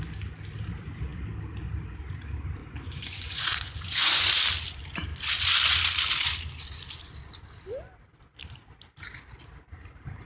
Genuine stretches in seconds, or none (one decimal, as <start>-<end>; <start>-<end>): 0.0-2.6; 4.3-10.3